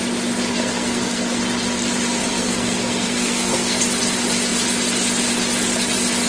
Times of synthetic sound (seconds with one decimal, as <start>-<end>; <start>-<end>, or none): 0.5-1.4; 2.2-3.8